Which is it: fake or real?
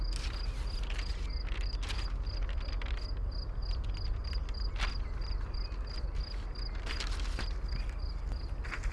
real